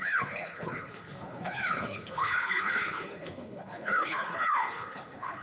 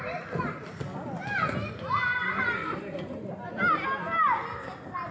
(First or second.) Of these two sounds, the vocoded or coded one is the first